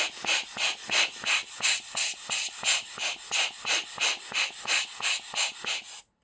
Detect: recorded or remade recorded